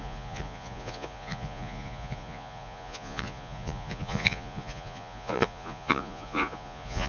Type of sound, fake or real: fake